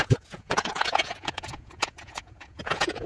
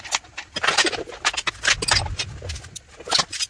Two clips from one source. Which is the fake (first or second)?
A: first